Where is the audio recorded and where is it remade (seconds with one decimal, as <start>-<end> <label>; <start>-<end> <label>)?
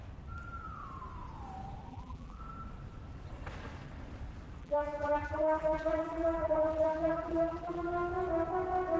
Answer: 0.0-1.9 recorded; 1.9-2.4 remade; 2.4-4.6 recorded; 4.6-7.9 remade; 7.9-9.0 recorded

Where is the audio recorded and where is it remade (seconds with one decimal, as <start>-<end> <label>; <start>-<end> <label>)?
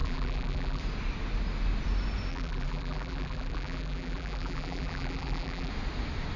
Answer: 0.0-0.8 remade; 0.8-2.3 recorded; 2.3-5.7 remade; 5.7-6.4 recorded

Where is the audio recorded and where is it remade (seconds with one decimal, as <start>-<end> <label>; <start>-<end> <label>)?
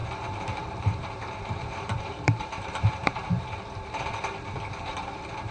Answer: 0.0-3.3 remade; 3.3-5.5 recorded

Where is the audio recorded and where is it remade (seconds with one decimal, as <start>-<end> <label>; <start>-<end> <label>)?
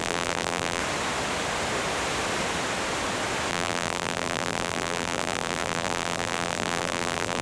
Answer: 0.0-0.8 remade; 0.8-3.5 recorded; 3.5-7.4 remade